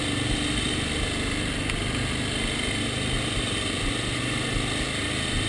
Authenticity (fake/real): real